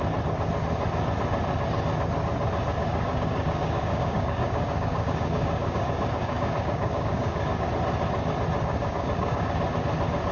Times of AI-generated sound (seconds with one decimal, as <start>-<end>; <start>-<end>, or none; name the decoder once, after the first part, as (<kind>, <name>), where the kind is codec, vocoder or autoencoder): 2.8-7.7 (codec, DAC); 8.7-9.5